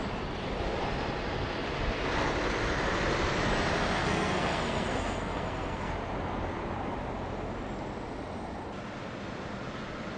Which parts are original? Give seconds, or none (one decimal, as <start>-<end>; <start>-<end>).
0.0-4.0; 5.9-10.2